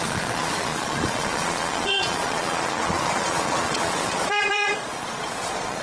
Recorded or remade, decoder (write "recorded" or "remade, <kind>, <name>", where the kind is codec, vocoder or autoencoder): remade, vocoder, Vocos